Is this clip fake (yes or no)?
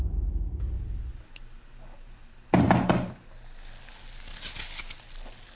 no